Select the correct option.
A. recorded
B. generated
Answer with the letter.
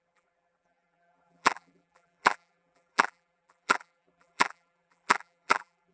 B